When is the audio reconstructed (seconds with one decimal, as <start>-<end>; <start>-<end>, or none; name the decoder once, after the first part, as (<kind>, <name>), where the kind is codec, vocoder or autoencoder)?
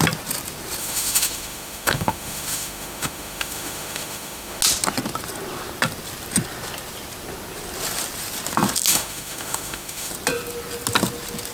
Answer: 0.8-4.6 (autoencoder, DAC-VAE); 8.9-10.1